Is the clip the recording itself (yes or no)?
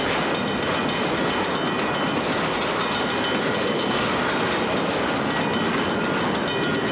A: yes